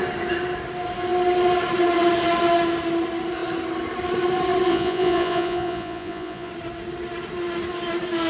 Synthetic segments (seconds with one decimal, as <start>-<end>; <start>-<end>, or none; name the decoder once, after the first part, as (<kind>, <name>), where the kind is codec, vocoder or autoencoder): 4.7-6.5 (vocoder, Vocos)